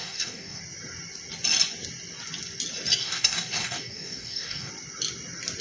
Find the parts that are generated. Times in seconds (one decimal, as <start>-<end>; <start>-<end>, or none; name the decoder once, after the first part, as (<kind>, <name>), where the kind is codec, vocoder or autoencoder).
0.0-0.6 (codec, DAC); 3.0-4.7